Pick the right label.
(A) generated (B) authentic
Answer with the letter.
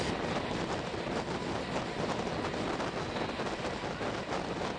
B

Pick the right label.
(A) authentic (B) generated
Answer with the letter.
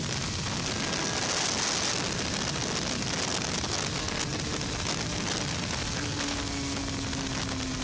A